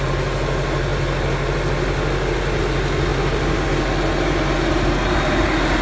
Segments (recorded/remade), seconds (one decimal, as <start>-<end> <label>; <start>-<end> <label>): 0.0-5.8 recorded